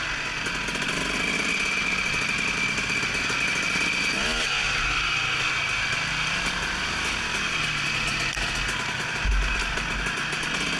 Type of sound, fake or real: real